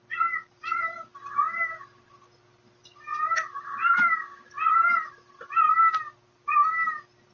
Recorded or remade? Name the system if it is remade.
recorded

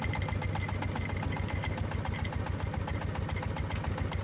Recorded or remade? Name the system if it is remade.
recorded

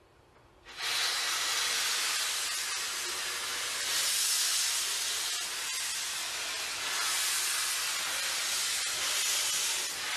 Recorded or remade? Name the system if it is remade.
recorded